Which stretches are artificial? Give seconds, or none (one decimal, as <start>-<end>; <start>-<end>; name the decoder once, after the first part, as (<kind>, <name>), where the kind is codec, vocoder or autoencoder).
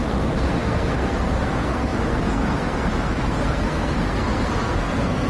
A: 0.0-5.3 (codec, SNAC)